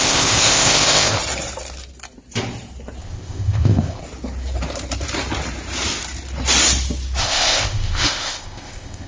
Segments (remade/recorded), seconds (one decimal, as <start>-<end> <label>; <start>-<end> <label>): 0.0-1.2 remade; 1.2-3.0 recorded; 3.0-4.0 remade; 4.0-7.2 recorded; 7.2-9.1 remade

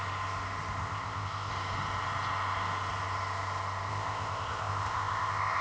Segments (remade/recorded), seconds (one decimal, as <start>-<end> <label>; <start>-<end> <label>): 0.0-0.8 recorded; 0.8-1.5 remade; 1.5-3.9 recorded; 3.9-5.6 remade

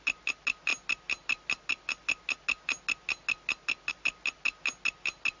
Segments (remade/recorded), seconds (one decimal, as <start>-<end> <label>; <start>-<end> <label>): 0.0-5.4 recorded

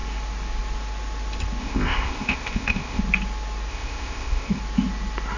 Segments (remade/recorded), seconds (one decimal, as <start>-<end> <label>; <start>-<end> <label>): 0.0-1.6 recorded; 1.6-3.0 remade; 3.0-3.7 recorded; 3.7-4.6 remade; 4.6-5.4 recorded

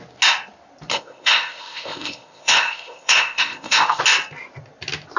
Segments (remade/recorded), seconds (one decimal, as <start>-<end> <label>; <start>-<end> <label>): 0.0-0.9 recorded; 0.9-4.0 remade; 4.0-5.2 recorded

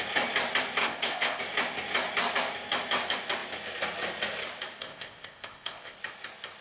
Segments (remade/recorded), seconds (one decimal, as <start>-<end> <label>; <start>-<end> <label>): 0.0-0.8 recorded; 0.8-1.4 remade; 1.4-4.8 recorded; 4.8-6.0 remade; 6.0-6.6 recorded